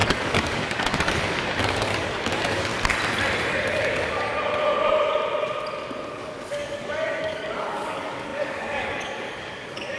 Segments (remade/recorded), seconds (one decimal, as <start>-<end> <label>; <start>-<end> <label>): 0.0-2.7 remade; 2.7-3.5 recorded; 3.5-4.3 remade; 4.3-6.1 recorded; 6.1-10.0 remade